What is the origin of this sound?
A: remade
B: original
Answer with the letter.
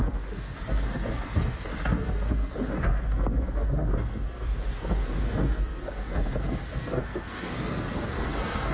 A